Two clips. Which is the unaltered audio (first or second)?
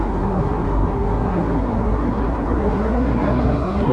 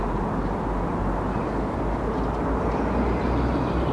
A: second